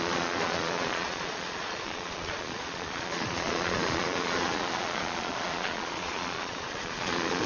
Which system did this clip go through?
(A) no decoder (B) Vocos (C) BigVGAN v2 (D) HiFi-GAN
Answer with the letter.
B